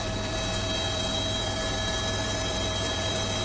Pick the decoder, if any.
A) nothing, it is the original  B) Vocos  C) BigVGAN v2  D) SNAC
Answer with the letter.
C